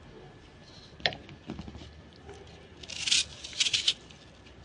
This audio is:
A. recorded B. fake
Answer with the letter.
A